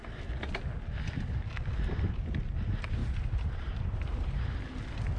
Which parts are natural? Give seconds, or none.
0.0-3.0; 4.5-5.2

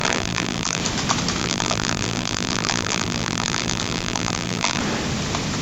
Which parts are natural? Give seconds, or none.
0.8-1.4; 4.8-5.6

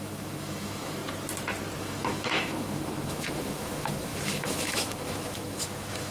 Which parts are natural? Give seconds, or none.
1.0-1.8

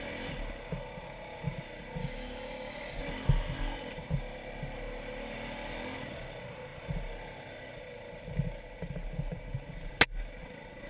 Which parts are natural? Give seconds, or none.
0.0-2.0; 3.0-10.9

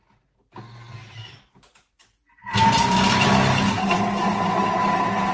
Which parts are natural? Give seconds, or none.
0.0-5.3

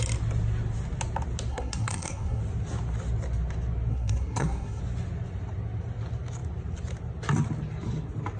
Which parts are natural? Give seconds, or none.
0.0-1.5; 2.4-3.9; 4.8-8.4

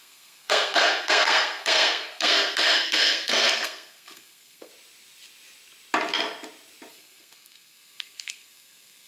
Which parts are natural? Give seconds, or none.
4.7-6.9

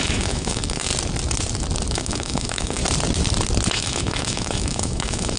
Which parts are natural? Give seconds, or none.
0.9-1.9; 2.8-3.7